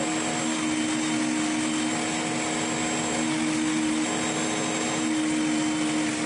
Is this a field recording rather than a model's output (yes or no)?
yes